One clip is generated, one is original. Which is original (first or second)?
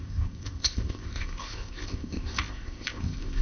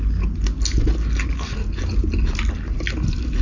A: second